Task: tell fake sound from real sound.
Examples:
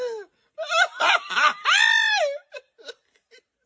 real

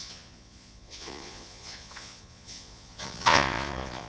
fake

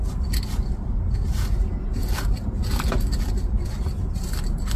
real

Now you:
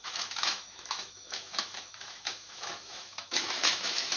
fake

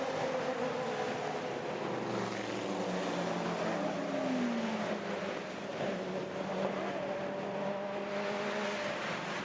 real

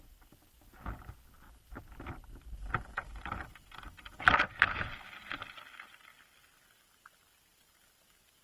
real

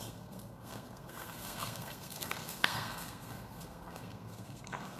fake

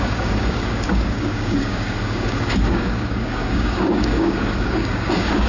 fake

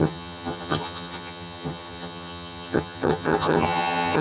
fake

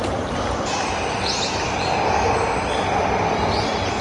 real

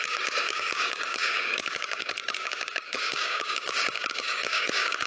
fake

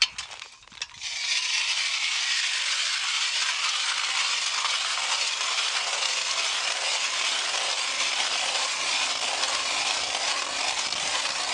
real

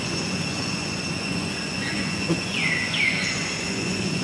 fake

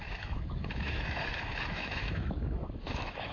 fake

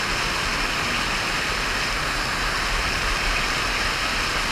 real